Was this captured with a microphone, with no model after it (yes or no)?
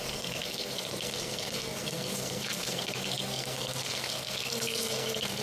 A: no